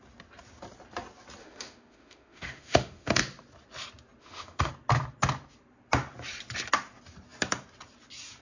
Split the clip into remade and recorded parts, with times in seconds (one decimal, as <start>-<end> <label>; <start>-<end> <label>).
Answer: 0.0-1.4 recorded; 1.4-3.2 remade; 3.2-4.2 recorded; 4.2-4.7 remade; 4.7-8.4 recorded